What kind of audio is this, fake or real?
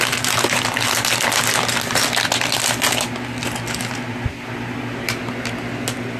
real